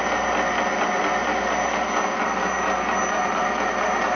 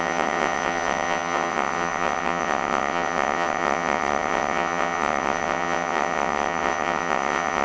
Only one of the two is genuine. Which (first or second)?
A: first